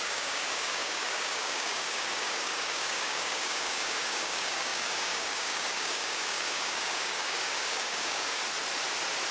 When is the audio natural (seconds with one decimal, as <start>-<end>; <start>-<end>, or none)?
8.4-9.3